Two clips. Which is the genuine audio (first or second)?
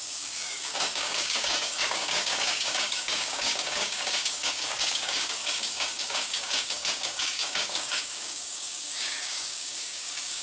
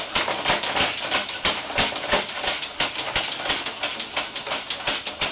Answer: second